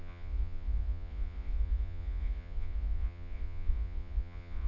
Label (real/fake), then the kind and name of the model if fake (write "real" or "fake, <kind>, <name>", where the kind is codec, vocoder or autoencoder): fake, vocoder, Vocos